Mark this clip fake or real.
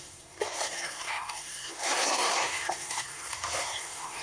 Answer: fake